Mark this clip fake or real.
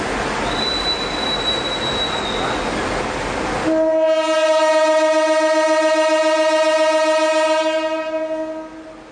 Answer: real